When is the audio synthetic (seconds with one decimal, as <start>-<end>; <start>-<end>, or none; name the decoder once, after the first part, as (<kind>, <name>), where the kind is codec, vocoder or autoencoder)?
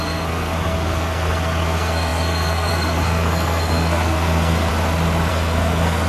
0.0-4.7 (codec, SNAC); 5.3-6.1